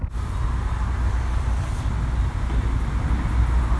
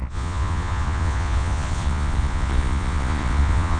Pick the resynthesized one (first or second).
second